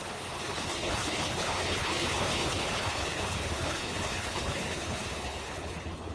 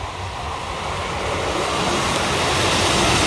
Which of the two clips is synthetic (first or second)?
first